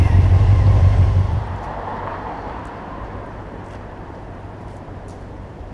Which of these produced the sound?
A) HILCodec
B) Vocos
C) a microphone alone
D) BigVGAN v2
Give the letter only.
D